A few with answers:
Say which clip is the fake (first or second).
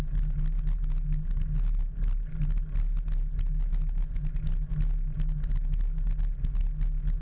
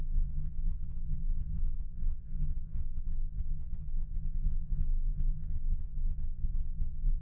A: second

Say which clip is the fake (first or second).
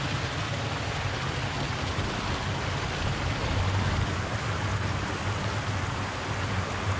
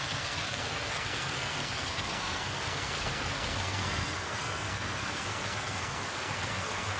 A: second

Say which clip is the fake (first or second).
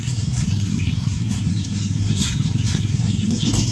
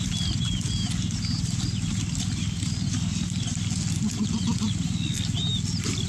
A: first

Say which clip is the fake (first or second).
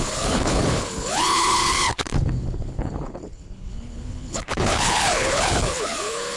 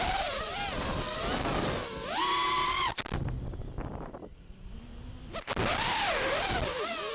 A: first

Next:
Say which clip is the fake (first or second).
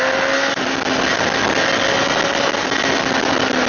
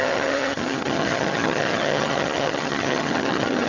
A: second